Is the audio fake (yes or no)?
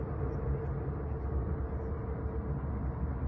no